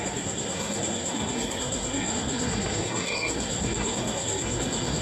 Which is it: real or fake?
fake